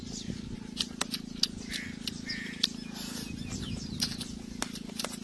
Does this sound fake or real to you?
real